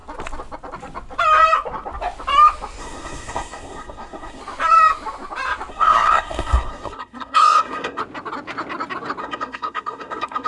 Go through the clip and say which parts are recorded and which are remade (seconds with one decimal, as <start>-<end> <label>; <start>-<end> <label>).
0.0-2.8 recorded; 2.8-4.4 remade; 4.4-5.7 recorded; 5.7-8.0 remade; 8.0-9.2 recorded; 9.2-10.5 remade